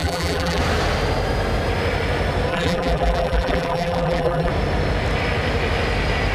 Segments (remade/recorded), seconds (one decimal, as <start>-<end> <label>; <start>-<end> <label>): 0.0-0.6 remade; 0.6-2.5 recorded; 2.5-4.5 remade; 4.5-6.3 recorded